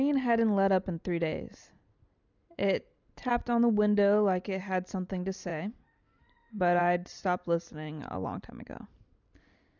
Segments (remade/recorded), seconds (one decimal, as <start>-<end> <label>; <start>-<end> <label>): 0.0-2.4 recorded; 2.4-3.3 remade; 3.3-6.8 recorded; 6.8-9.3 remade; 9.3-9.8 recorded